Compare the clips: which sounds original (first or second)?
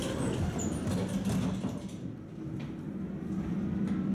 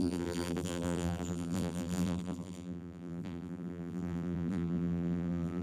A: first